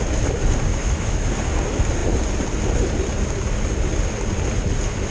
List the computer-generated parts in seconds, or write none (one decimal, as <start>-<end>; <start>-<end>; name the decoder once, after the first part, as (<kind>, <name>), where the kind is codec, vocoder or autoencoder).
0.7-1.2 (autoencoder, DAC-VAE)

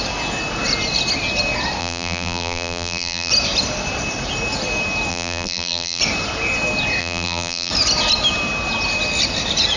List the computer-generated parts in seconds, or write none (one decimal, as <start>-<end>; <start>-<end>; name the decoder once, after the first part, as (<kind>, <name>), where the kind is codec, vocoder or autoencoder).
1.8-3.3 (vocoder, BigVGAN v2); 5.1-6.0; 7.0-7.7

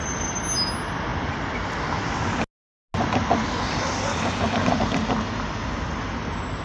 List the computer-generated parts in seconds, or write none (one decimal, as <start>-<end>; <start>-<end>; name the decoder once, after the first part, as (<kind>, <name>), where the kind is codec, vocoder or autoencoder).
none